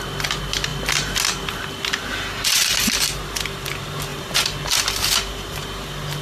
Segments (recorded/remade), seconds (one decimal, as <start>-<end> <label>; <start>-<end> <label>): 0.0-6.2 recorded